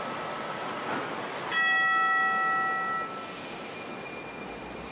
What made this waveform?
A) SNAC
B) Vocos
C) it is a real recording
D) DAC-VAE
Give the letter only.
C